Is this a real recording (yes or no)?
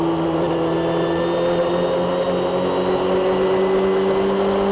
yes